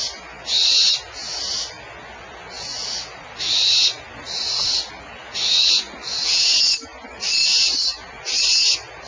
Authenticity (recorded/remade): recorded